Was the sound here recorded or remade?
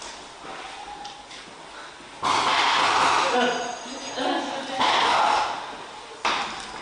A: recorded